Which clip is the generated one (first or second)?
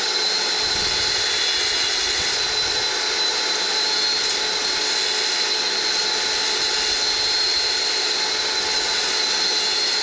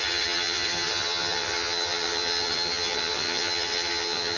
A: second